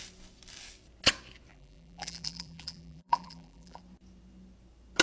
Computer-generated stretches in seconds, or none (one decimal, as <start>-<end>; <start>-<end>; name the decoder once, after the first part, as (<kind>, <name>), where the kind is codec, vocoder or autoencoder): 1.5-3.8 (vocoder, BigVGAN v2)